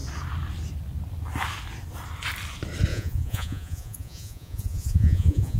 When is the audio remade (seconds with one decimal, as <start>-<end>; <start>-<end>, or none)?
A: 2.9-5.6